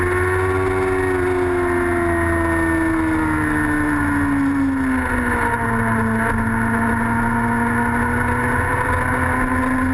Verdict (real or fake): real